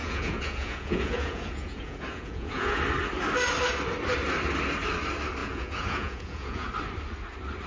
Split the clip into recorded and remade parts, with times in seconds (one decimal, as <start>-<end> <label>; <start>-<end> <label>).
0.0-2.8 remade; 2.8-5.4 recorded; 5.4-6.7 remade; 6.7-7.7 recorded